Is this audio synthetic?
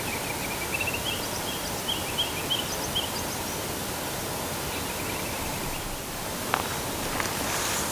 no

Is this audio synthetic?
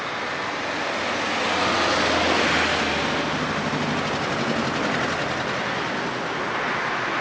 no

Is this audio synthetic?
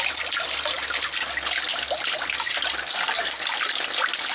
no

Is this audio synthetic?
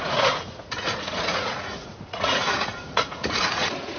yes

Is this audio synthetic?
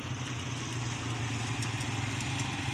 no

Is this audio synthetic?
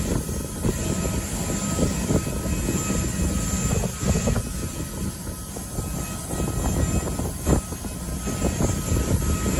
no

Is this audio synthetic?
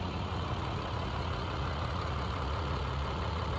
yes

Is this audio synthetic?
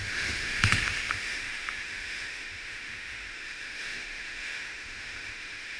yes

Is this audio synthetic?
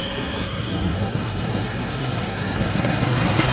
yes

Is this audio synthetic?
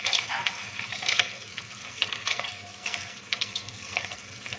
yes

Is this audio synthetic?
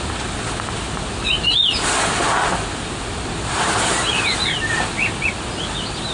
no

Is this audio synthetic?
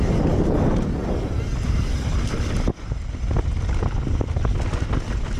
no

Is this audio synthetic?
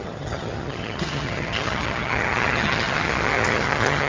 yes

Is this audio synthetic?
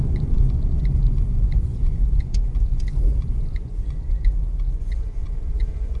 yes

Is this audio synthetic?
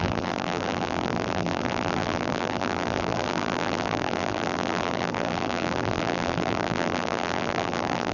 yes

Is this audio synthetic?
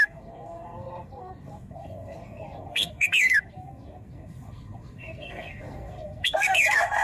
yes